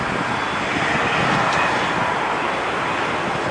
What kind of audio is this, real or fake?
real